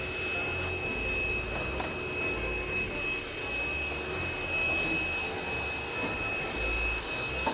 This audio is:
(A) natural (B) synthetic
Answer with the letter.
A